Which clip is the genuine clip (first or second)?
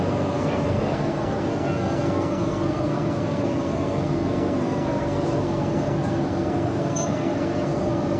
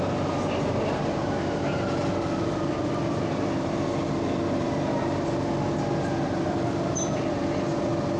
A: second